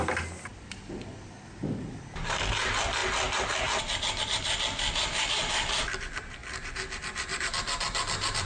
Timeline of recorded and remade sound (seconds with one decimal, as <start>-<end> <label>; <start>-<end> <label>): 0.0-8.5 recorded